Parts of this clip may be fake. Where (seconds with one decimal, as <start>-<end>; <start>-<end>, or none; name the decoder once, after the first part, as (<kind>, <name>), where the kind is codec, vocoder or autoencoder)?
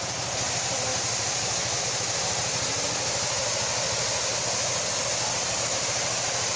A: 0.0-0.9 (vocoder, BigVGAN v2); 1.8-3.4; 5.0-6.6